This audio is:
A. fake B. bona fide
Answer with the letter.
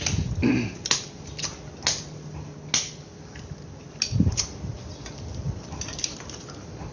B